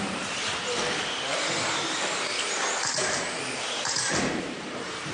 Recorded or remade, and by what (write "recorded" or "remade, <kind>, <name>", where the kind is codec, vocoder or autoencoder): remade, vocoder, BigVGAN v2